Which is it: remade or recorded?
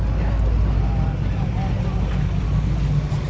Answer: recorded